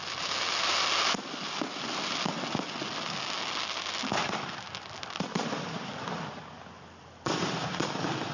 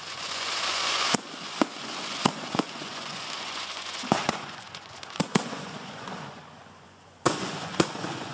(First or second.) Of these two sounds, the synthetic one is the second